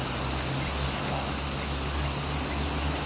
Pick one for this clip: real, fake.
real